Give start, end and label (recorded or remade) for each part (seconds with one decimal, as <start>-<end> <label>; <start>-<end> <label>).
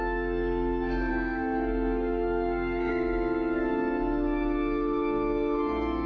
0.0-1.1 recorded; 1.1-2.9 remade; 2.9-6.1 recorded